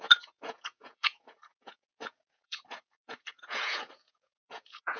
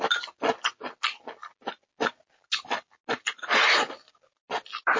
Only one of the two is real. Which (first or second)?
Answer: second